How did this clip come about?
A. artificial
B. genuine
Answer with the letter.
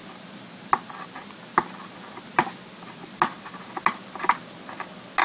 B